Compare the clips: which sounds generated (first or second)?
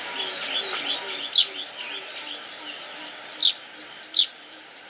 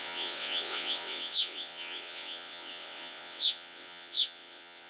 second